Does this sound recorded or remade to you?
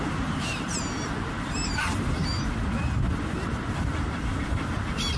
remade